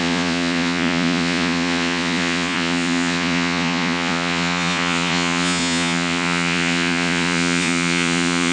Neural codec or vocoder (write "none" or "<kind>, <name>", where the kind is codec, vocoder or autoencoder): vocoder, Vocos